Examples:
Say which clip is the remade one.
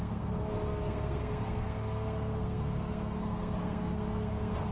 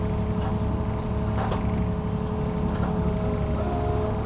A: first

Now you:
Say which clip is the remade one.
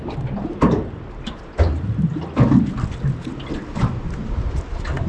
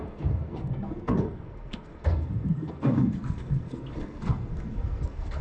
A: second